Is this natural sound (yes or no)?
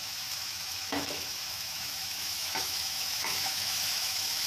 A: no